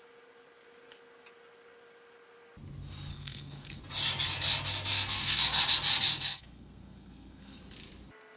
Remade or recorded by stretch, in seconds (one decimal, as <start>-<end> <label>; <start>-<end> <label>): 0.0-3.1 recorded; 3.1-3.8 remade; 3.8-4.9 recorded; 4.9-5.6 remade; 5.6-6.1 recorded; 6.1-7.6 remade; 7.6-8.4 recorded